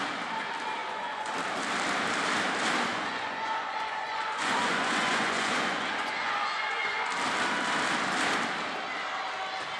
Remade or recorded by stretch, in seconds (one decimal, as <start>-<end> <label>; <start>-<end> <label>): 0.0-0.8 recorded; 0.8-1.3 remade; 1.3-2.9 recorded; 2.9-7.1 remade; 7.1-9.8 recorded